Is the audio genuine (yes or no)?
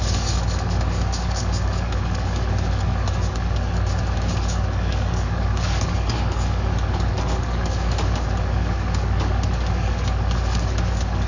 no